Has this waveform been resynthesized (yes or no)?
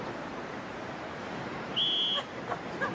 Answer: no